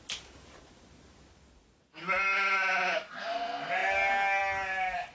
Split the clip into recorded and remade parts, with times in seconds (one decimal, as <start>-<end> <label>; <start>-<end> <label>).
0.0-5.1 recorded